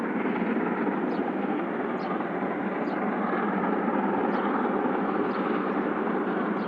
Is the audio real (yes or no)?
yes